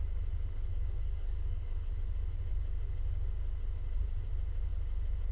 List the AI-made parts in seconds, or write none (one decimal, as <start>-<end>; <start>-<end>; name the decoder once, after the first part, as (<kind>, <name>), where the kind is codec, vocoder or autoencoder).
0.7-1.9 (codec, DAC)